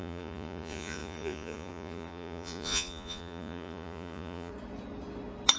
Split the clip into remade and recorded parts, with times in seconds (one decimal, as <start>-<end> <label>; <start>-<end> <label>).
0.0-4.5 remade; 4.5-5.6 recorded